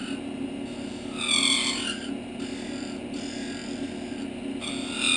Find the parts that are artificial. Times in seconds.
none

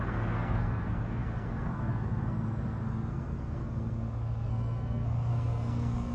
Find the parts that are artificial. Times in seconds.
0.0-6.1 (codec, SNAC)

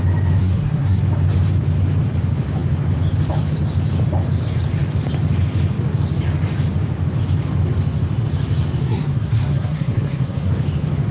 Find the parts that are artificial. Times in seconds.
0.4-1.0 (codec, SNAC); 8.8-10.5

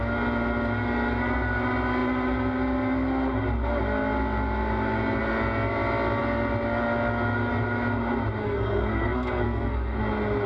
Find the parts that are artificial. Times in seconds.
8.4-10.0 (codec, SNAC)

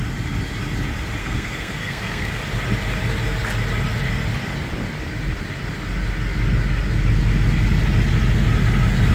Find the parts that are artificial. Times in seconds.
1.2-2.4 (codec, SNAC)

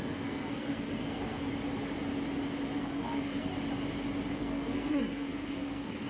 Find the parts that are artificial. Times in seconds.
0.0-1.5 (codec, SNAC); 2.8-3.5; 4.3-6.1

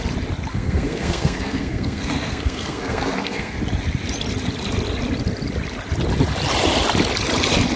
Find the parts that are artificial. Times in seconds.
0.5-3.6 (codec, SNAC)